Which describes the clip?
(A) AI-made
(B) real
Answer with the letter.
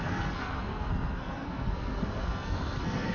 A